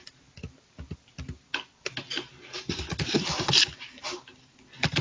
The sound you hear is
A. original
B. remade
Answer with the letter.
A